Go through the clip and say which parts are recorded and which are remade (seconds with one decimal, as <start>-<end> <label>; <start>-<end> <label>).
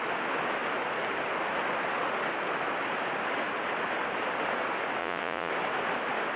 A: 0.0-5.0 recorded; 5.0-5.5 remade; 5.5-6.4 recorded